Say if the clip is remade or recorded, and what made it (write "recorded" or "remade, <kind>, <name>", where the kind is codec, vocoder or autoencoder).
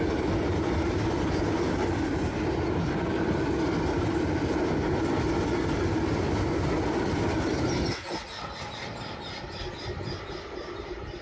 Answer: recorded